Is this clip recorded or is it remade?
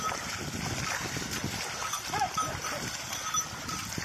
recorded